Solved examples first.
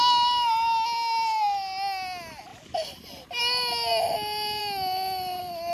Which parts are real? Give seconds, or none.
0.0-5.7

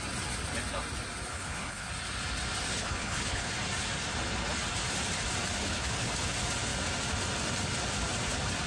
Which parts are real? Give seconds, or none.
0.0-1.3; 1.9-2.7; 3.5-5.6; 6.1-8.7

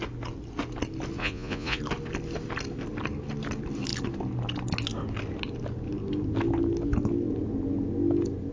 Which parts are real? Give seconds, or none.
0.0-1.2; 1.8-8.5

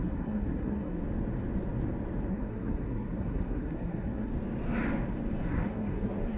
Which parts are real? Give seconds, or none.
1.0-2.3; 4.3-5.4

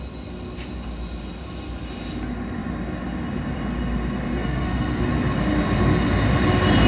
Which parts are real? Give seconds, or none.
0.0-4.3; 5.0-6.9